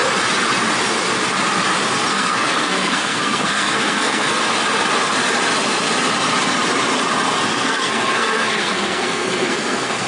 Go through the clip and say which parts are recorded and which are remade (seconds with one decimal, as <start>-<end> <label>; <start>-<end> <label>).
0.0-2.1 recorded; 2.1-4.4 remade; 4.4-7.5 recorded; 7.5-10.1 remade